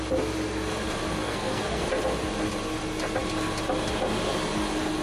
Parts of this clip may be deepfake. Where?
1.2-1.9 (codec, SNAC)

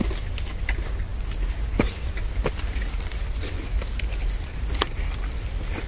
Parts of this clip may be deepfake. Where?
none

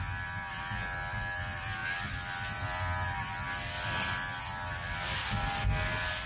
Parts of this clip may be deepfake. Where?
none

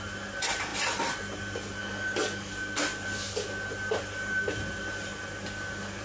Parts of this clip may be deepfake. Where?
1.8-2.5 (codec, DAC)

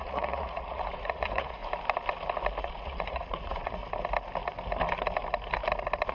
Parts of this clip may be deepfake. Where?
0.0-1.6 (vocoder, Vocos); 2.6-3.8

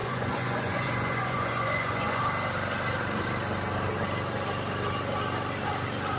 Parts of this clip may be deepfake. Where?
0.0-2.2 (vocoder, Vocos)

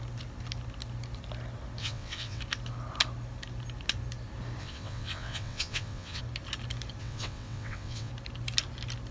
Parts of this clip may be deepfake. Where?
1.8-2.4 (vocoder, WaveNeXt); 4.6-6.2; 7.0-8.1